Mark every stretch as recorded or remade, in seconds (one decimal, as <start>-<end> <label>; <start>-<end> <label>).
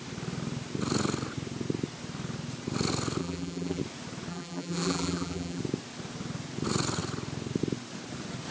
0.0-3.2 recorded; 3.2-3.8 remade; 3.8-4.3 recorded; 4.3-5.6 remade; 5.6-8.5 recorded